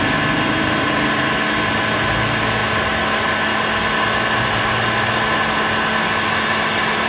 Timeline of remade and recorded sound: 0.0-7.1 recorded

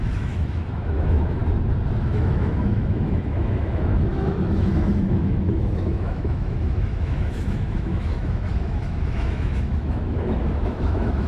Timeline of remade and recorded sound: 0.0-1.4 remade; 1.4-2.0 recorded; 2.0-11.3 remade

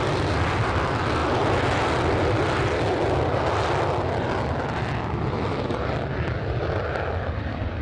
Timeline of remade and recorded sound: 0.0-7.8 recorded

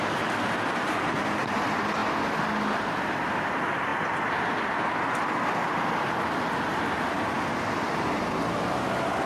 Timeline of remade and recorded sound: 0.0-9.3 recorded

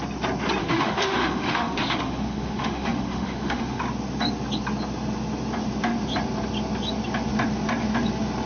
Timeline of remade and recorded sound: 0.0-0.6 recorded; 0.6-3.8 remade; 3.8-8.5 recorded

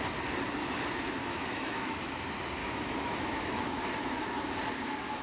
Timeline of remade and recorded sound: 0.0-1.2 recorded; 1.2-2.0 remade; 2.0-2.6 recorded; 2.6-4.4 remade; 4.4-5.2 recorded

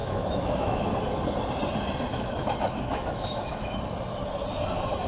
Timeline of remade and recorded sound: 0.0-0.9 remade; 0.9-2.1 recorded; 2.1-3.7 remade; 3.7-5.1 recorded